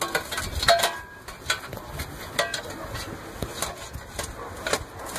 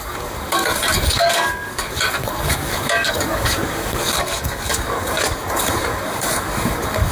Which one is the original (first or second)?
first